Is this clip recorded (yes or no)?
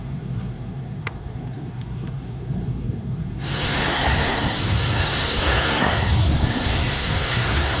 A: no